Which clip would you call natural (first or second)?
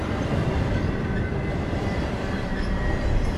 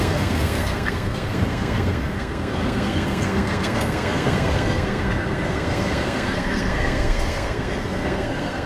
first